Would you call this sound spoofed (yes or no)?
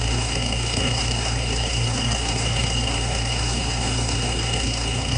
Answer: yes